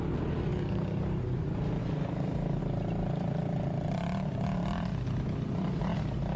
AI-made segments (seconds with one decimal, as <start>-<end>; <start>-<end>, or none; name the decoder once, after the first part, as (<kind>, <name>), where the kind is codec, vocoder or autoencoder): 0.5-1.4 (codec, DAC); 1.8-2.6